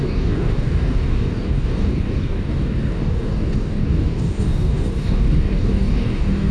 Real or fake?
fake